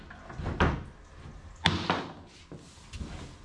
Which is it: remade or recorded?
recorded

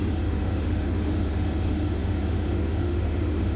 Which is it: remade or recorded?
remade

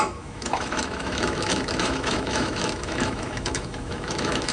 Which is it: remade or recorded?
remade